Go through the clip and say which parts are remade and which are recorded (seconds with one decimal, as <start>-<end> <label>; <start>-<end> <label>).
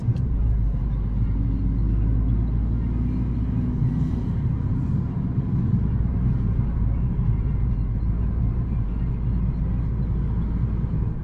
0.0-0.8 remade; 0.8-3.8 recorded; 3.8-8.9 remade; 8.9-11.2 recorded